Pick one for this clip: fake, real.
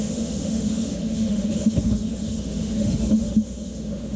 fake